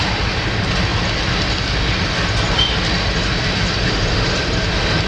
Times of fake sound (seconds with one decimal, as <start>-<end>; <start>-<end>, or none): none